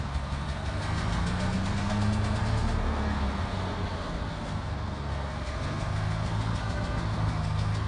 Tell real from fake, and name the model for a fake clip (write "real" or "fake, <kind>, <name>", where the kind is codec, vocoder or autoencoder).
fake, codec, SNAC